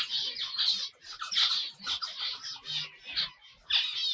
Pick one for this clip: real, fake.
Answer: real